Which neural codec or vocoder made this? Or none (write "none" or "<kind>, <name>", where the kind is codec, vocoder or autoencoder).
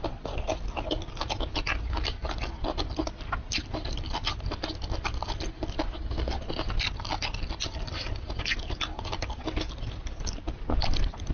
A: none